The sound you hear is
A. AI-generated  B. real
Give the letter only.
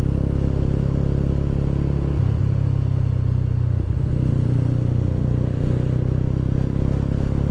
B